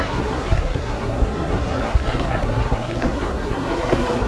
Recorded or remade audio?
remade